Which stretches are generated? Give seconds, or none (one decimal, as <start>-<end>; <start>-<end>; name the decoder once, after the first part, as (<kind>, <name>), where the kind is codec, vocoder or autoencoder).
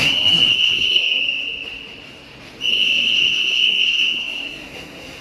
0.0-1.2 (codec, SNAC); 2.7-5.2